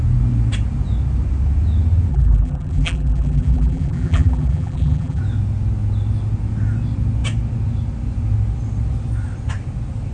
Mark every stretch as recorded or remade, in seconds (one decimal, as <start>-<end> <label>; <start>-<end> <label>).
0.0-2.1 recorded; 2.1-5.2 remade; 5.2-10.1 recorded